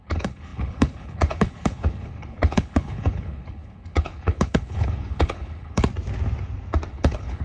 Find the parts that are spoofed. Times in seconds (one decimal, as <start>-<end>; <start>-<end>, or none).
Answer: 0.0-5.9; 6.9-7.4